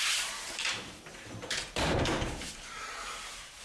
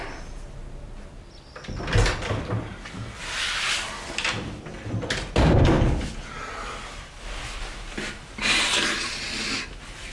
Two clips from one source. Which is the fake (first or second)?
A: first